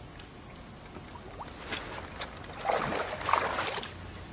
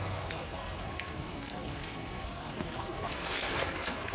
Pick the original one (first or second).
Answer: first